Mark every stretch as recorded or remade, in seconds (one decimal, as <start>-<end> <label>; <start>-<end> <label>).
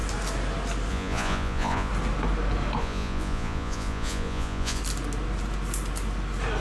0.0-0.9 recorded; 0.9-1.9 remade; 1.9-2.8 recorded; 2.8-4.8 remade; 4.8-6.6 recorded